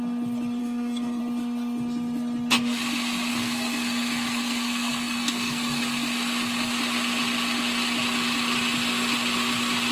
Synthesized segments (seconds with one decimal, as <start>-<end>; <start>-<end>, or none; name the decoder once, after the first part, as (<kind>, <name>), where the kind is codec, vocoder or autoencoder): 0.6-1.2 (codec, SNAC); 3.3-5.8